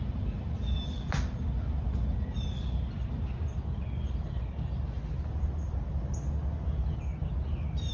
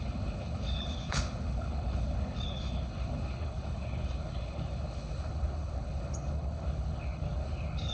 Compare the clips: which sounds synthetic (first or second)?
second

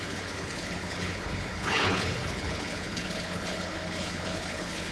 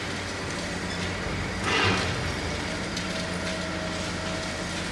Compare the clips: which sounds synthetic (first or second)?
first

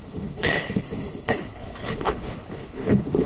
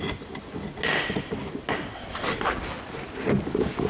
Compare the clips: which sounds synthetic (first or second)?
first